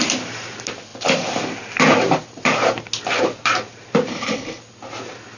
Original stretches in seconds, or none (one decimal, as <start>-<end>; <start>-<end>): 0.0-4.1; 4.6-5.4